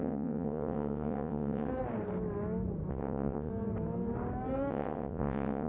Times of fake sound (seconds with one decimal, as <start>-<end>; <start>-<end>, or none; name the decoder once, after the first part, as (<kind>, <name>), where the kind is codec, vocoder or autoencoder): 0.0-1.7 (vocoder, WaveNeXt); 2.9-3.5; 4.7-5.7

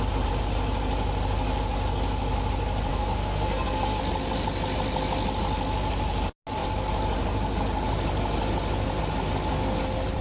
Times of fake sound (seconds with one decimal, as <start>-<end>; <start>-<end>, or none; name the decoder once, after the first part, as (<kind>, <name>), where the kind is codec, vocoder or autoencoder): 2.9-4.0 (codec, SNAC)